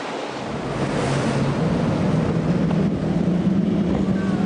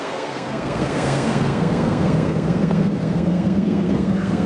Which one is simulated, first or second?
second